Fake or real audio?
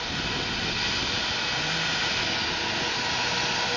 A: real